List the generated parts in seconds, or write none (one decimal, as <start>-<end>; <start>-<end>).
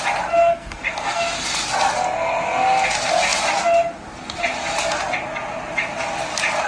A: 0.4-1.2